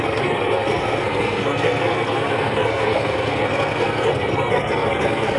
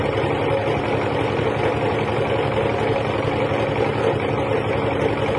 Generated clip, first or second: first